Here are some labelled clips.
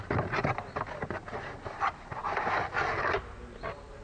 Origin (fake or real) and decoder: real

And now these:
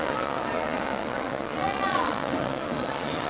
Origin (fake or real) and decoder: fake, vocoder, Vocos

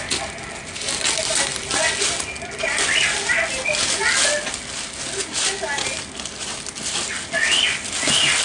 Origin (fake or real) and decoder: real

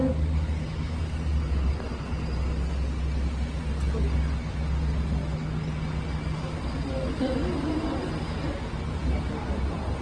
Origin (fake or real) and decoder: real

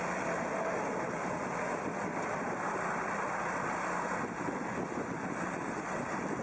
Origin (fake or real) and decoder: real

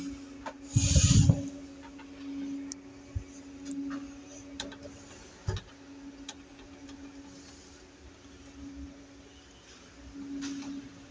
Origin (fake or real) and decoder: real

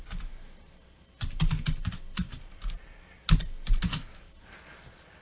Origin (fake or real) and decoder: real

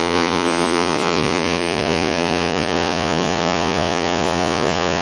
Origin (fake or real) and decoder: fake, vocoder, Vocos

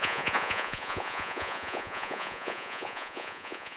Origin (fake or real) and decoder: fake, vocoder, Vocos